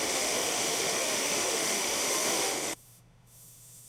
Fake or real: fake